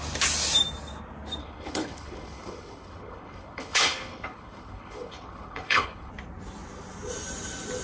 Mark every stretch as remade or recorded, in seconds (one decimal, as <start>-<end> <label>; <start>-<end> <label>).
0.0-1.4 recorded; 1.4-6.1 remade; 6.1-7.8 recorded